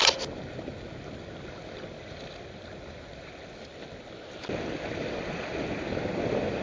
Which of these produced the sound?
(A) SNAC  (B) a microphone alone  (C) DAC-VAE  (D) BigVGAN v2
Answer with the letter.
B